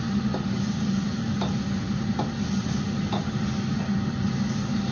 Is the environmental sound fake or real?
real